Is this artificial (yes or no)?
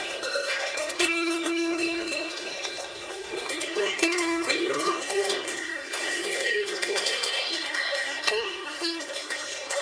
yes